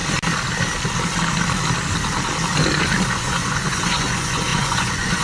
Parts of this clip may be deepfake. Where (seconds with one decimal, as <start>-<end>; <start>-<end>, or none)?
3.1-5.2